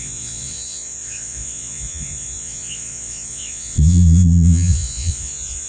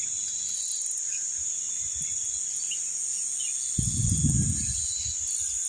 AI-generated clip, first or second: first